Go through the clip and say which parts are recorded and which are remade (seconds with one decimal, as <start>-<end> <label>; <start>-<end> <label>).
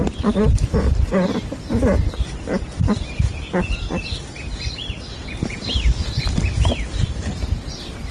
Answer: 0.0-8.1 recorded